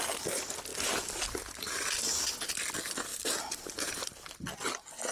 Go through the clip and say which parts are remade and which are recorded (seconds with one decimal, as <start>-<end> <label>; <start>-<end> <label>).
0.0-0.7 recorded; 0.7-2.5 remade; 2.5-3.1 recorded; 3.1-4.3 remade; 4.3-5.1 recorded

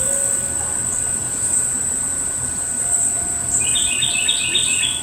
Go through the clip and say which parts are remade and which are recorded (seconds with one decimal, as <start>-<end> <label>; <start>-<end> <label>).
0.0-1.2 recorded; 1.2-3.9 remade; 3.9-5.0 recorded